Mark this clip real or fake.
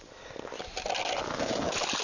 real